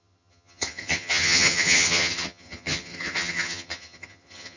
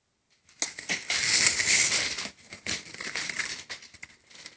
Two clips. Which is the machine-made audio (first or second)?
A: first